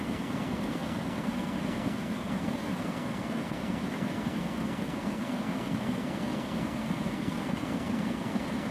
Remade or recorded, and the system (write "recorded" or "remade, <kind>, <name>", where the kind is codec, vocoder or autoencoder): remade, codec, SNAC